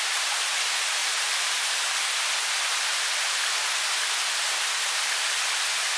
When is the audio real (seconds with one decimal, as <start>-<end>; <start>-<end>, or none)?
0.0-6.0